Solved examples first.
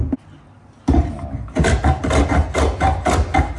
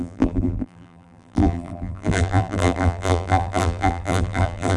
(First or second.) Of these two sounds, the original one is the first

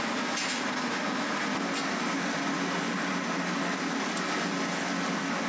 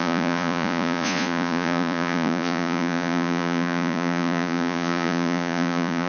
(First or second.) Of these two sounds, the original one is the first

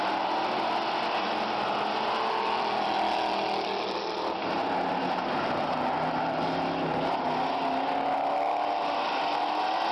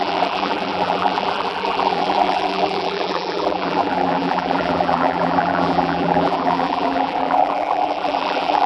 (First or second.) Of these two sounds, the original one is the first